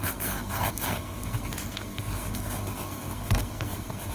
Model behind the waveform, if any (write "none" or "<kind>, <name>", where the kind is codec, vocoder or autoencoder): codec, SNAC